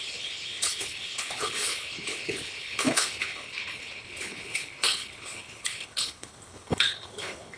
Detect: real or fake fake